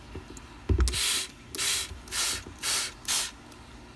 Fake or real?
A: real